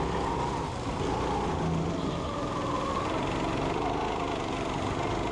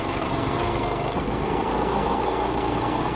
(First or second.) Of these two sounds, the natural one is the first